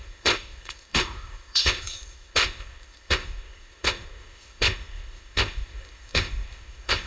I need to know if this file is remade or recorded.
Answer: remade